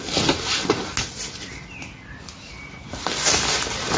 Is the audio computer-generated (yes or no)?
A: no